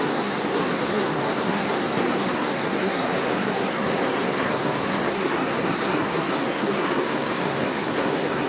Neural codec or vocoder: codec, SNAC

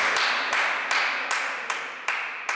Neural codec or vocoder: none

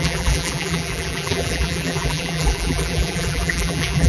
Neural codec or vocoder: vocoder, BigVGAN v2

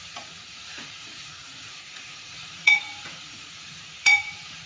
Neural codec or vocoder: vocoder, Vocos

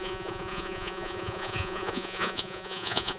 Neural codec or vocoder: vocoder, Vocos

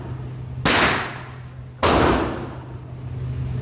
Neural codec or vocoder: none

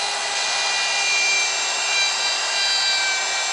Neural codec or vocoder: none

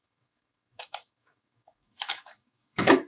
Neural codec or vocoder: autoencoder, DAC-VAE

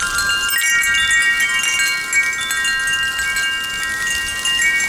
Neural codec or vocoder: none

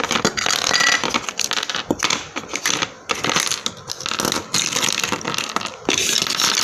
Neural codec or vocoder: none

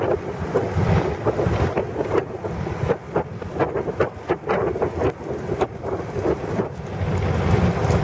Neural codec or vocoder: none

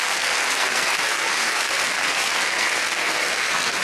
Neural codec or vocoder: codec, SNAC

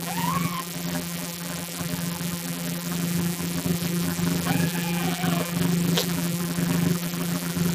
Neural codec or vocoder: vocoder, BigVGAN v2